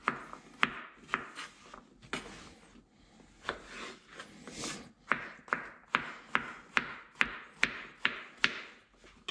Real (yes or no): yes